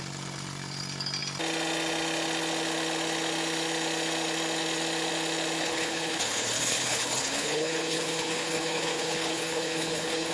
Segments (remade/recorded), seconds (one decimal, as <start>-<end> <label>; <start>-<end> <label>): 0.0-5.6 recorded; 5.6-10.3 remade